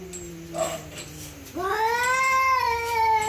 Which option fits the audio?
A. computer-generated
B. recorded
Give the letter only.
B